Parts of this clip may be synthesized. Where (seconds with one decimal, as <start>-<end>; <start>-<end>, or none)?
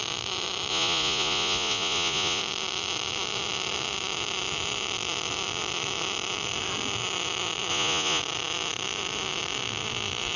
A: 0.7-2.4; 7.7-8.2